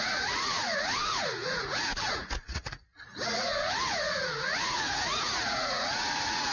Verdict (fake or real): fake